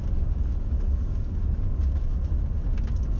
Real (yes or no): yes